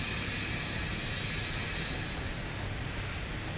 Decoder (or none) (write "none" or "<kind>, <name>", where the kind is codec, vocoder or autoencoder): none